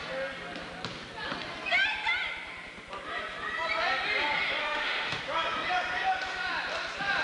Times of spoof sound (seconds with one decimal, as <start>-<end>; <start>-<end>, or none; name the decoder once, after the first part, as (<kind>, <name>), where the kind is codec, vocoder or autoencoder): 4.6-5.2 (autoencoder, DAC-VAE)